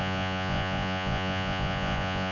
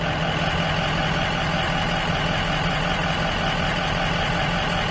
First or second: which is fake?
first